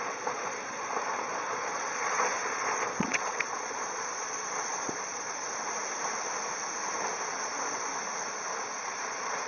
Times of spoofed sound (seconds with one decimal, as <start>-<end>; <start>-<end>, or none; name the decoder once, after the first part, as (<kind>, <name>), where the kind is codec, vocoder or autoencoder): 0.0-5.5 (vocoder, Vocos); 7.4-7.9; 8.8-9.5